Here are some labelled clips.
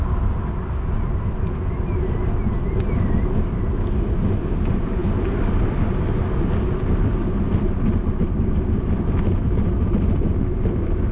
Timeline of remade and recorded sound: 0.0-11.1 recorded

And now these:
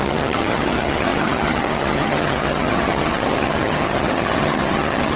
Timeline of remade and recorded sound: 0.0-5.2 remade

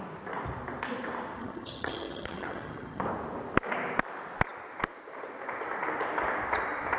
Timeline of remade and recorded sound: 0.0-1.4 recorded; 1.4-3.0 remade; 3.0-7.0 recorded

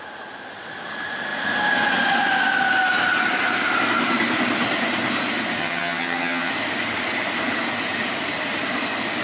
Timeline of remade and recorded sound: 0.0-5.6 recorded; 5.6-6.5 remade; 6.5-9.2 recorded

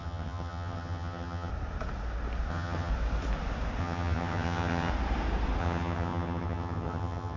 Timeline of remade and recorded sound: 0.0-1.5 remade; 1.5-2.5 recorded; 2.5-2.9 remade; 2.9-3.8 recorded; 3.8-4.9 remade; 4.9-5.6 recorded; 5.6-7.4 remade

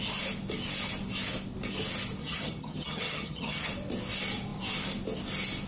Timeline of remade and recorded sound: 0.0-2.2 recorded; 2.2-3.7 remade; 3.7-5.7 recorded

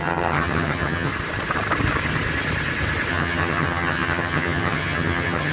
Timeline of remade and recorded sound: 0.0-1.1 remade; 1.1-3.1 recorded; 3.1-5.5 remade

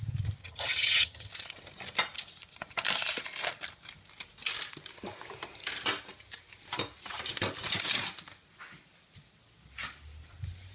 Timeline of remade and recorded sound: 0.0-0.4 recorded; 0.4-1.3 remade; 1.3-10.7 recorded